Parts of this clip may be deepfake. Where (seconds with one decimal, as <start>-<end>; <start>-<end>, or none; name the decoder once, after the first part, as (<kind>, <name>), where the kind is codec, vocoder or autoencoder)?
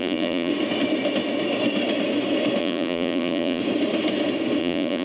0.0-0.5 (vocoder, BigVGAN v2); 2.6-3.6; 4.6-5.0